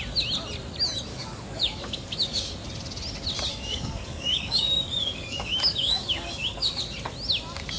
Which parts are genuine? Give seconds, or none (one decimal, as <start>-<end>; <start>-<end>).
0.0-1.1; 2.5-3.5; 6.8-7.8